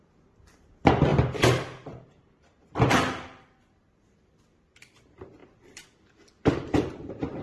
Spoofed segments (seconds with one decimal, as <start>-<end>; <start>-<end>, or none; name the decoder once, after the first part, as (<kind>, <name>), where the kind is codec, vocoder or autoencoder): 5.4-7.4 (vocoder, BigVGAN v2)